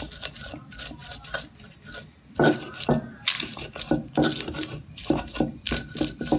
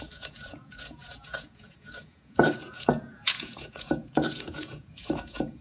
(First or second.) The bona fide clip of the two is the first